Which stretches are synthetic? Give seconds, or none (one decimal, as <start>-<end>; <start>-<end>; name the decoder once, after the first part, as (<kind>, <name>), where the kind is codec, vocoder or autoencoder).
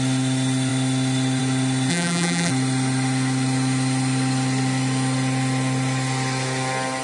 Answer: 1.9-2.5 (vocoder, BigVGAN v2)